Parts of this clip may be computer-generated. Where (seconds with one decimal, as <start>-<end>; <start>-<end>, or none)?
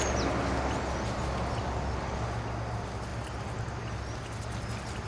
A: none